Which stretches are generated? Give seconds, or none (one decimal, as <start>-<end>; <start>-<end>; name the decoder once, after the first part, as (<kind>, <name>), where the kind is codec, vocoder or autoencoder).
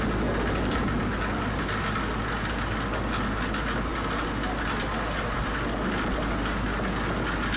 none